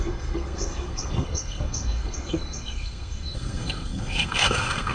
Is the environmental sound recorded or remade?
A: remade